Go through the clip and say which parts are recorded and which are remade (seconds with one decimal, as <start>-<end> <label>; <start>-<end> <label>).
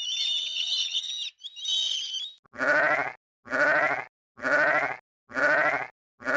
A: 0.0-0.4 recorded; 0.4-1.1 remade; 1.1-6.4 recorded